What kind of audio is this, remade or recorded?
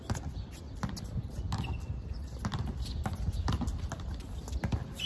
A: recorded